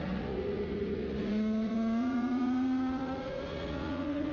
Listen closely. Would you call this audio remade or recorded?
remade